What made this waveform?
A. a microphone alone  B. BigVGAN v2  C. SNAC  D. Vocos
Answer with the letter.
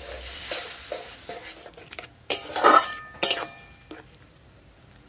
B